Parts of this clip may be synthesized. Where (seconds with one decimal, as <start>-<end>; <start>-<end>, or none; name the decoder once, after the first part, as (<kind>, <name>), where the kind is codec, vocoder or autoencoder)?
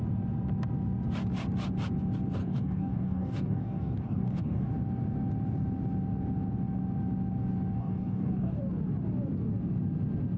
2.4-4.7 (codec, DAC); 7.8-8.6